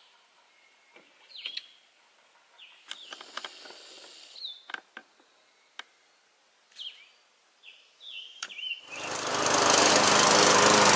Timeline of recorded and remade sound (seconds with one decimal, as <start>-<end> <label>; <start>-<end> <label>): 0.0-11.0 recorded